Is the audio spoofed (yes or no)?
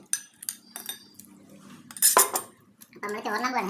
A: no